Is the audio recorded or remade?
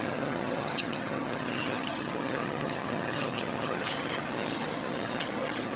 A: remade